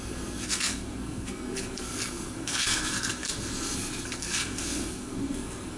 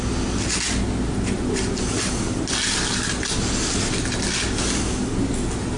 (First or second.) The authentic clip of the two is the second